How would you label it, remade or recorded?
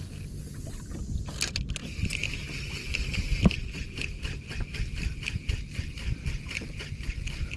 recorded